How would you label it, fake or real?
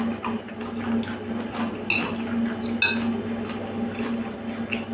real